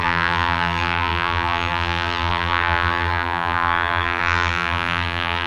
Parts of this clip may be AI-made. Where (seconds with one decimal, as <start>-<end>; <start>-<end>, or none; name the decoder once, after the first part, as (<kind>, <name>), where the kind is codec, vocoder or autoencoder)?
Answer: 0.0-5.5 (vocoder, BigVGAN v2)